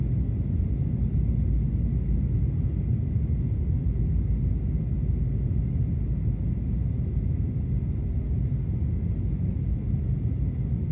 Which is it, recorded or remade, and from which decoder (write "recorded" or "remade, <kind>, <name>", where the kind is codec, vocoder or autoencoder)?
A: recorded